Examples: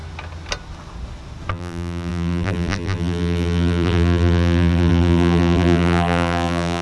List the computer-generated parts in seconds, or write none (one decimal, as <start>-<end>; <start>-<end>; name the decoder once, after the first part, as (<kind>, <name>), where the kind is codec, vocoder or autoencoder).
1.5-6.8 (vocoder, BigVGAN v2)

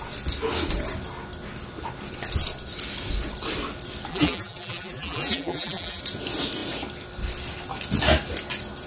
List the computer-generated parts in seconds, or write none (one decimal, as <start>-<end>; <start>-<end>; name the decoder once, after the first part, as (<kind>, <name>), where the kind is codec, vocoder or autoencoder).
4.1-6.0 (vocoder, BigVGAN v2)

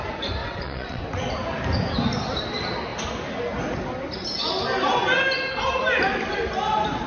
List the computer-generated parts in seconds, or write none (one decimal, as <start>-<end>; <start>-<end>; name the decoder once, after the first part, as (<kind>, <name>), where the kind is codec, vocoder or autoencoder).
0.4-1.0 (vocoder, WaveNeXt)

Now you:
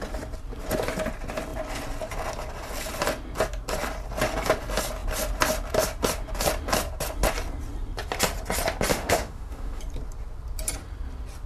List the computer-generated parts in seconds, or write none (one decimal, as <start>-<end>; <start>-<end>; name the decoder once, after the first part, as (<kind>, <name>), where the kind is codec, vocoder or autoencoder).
8.9-9.8 (autoencoder, DAC-VAE)

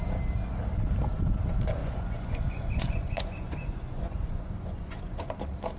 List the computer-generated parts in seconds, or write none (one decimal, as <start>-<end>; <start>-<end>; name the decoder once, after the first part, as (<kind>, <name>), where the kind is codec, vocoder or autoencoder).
1.8-5.3 (vocoder, Vocos)

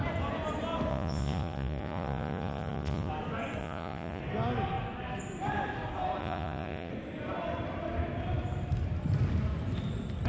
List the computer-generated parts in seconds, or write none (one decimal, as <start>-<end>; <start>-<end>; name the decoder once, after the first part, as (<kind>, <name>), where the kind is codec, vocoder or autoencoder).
0.9-3.1 (vocoder, Vocos); 3.6-4.2; 6.2-6.9

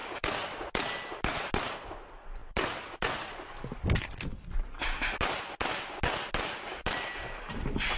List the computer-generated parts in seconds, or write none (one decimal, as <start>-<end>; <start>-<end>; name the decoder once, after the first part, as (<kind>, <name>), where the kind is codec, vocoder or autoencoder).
none